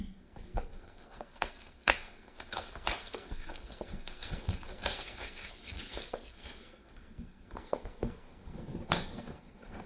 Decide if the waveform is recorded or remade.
remade